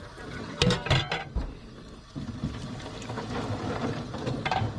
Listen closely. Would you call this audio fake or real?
real